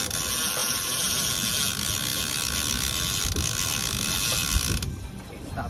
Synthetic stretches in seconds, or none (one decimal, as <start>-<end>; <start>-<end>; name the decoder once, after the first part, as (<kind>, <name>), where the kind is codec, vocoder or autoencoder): 0.6-1.3 (vocoder, BigVGAN v2); 2.1-5.7